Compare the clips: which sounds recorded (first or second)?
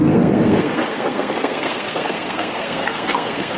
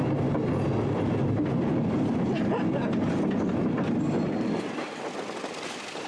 second